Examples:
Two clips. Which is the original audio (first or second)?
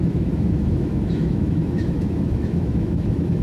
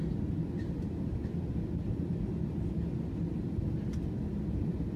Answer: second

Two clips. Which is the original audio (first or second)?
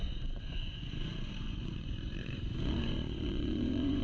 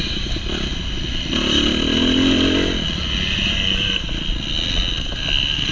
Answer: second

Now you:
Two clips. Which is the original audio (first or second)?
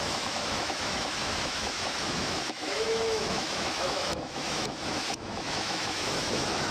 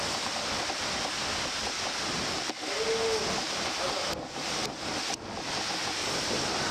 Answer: second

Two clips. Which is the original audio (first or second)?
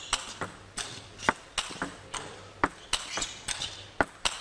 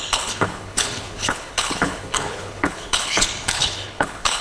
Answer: first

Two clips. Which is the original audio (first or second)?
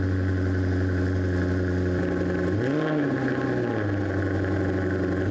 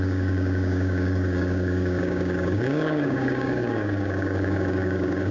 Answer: first